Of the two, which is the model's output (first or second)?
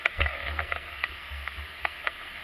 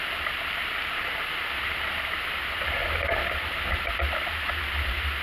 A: first